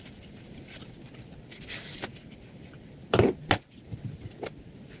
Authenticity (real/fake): real